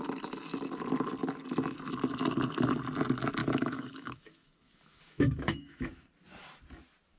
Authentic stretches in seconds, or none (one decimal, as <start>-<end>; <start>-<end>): 0.0-3.4; 5.9-7.2